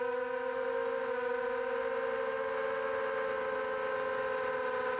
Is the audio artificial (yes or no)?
no